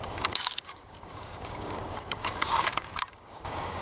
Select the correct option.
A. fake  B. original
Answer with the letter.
A